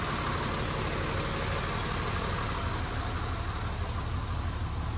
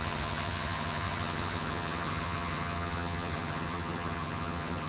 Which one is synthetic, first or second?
second